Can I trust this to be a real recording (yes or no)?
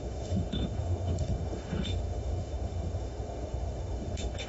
no